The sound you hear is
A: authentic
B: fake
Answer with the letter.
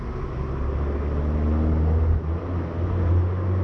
A